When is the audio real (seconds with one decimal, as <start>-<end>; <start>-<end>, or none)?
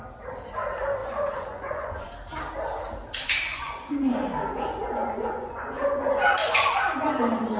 0.0-1.0; 2.1-3.5; 6.0-6.4; 7.1-7.6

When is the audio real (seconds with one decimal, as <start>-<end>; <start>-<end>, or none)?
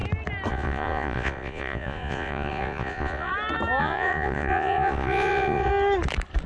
0.0-0.5; 3.3-3.8; 5.7-6.5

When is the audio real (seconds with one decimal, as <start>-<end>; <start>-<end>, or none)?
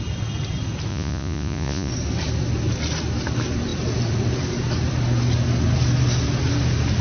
0.0-0.9; 1.9-7.0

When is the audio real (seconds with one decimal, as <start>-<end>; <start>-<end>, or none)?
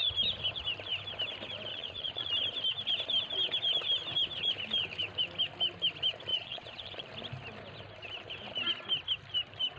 0.0-1.7; 2.3-6.3; 7.1-9.8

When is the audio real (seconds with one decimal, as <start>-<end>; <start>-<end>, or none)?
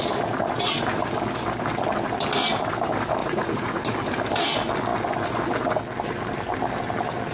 0.0-3.2; 3.8-7.3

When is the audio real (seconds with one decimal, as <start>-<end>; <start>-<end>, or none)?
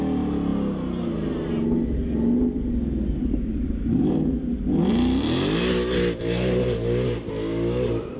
0.0-8.2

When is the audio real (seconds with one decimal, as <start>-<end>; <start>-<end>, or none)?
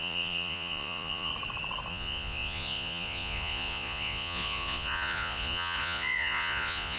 1.3-1.9